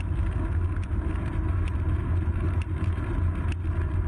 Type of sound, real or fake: real